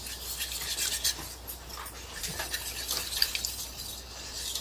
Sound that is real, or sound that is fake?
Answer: real